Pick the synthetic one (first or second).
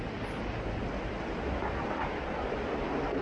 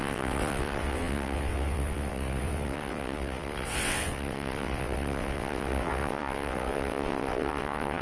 second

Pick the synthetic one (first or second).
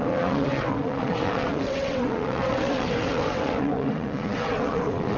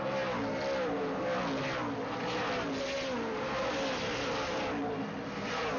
first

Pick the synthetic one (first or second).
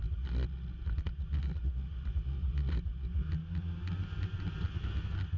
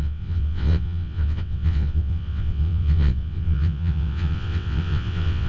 second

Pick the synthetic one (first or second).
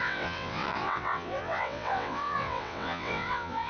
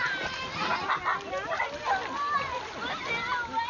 first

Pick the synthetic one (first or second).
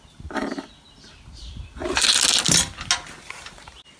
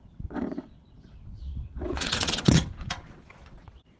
second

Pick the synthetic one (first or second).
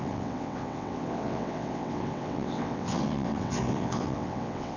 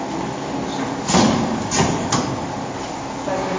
first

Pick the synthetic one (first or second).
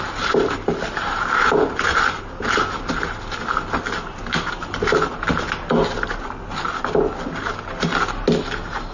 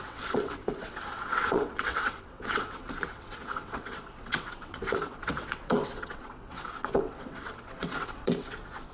second